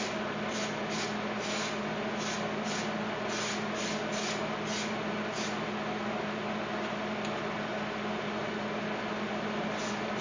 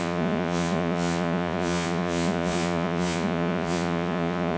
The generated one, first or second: second